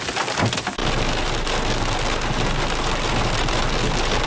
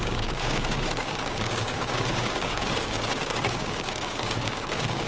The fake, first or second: second